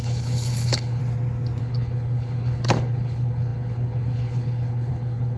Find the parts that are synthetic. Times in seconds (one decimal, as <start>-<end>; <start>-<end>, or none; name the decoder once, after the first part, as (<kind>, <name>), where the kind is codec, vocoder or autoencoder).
0.0-1.0 (codec, HILCodec); 1.6-5.4

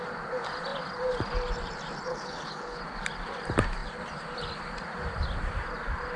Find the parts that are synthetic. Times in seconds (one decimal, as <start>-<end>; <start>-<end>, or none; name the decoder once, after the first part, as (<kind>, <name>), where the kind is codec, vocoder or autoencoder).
2.1-2.8 (codec, HILCodec)